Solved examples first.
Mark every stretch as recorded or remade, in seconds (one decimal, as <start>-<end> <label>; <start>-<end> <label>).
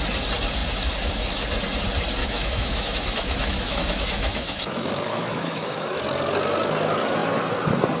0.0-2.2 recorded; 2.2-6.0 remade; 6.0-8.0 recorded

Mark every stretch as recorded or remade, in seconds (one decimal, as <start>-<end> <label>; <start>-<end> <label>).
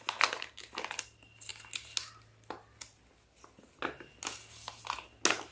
0.0-5.5 recorded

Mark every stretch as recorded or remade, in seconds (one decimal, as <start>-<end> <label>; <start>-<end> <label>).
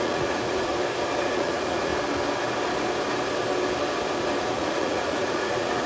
0.0-0.7 remade; 0.7-1.2 recorded; 1.2-1.9 remade; 1.9-4.4 recorded; 4.4-5.9 remade